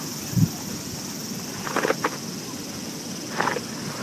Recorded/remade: recorded